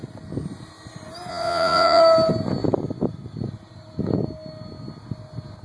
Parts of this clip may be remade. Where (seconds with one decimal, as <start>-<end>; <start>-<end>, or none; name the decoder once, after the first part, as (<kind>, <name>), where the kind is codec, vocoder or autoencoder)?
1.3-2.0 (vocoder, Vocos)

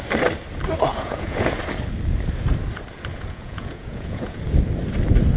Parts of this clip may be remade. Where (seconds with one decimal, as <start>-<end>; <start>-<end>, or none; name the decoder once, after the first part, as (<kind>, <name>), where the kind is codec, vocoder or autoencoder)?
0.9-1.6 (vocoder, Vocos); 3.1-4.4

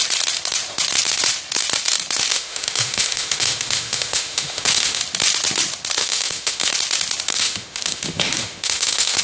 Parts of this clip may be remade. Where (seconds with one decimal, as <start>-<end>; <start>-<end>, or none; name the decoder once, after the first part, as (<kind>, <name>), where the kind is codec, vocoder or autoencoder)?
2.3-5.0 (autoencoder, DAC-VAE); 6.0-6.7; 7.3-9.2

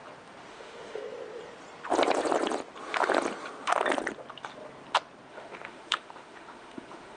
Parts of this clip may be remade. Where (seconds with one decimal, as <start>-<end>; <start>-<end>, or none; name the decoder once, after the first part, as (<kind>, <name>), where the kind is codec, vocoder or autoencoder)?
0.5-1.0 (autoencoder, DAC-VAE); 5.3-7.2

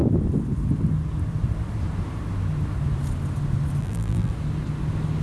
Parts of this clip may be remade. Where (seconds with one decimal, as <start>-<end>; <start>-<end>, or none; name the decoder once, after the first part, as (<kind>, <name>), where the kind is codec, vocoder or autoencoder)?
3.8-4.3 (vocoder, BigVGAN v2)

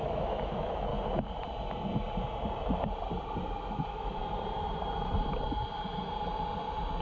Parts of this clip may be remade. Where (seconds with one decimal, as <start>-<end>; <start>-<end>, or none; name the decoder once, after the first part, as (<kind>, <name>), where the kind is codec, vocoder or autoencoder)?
0.0-0.9 (autoencoder, DAC-VAE); 3.7-4.2

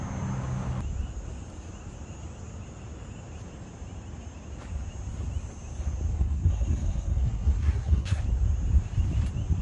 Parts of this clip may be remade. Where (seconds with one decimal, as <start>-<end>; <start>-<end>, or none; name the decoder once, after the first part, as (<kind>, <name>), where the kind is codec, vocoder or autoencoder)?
6.1-8.2 (codec, SNAC)